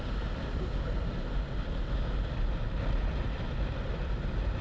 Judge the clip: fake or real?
real